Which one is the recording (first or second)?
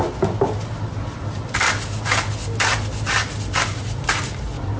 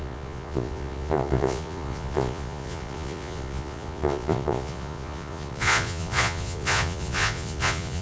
first